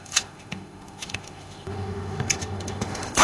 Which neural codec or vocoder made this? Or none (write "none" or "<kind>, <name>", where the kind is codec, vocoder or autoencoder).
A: autoencoder, DAC-VAE